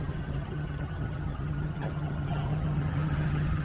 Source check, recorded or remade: remade